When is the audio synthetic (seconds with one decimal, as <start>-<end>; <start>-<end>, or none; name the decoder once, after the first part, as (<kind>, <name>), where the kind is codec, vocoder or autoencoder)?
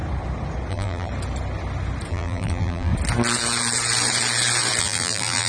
0.7-1.1 (vocoder, BigVGAN v2); 2.1-2.9; 4.8-5.5